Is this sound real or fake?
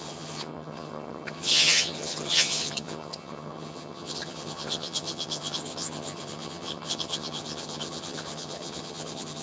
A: fake